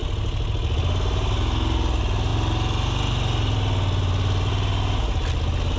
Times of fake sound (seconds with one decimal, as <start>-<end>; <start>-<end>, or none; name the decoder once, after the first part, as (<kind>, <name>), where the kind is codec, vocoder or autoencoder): none